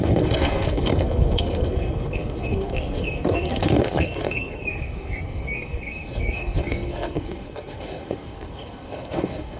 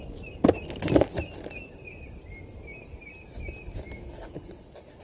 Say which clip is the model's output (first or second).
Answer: first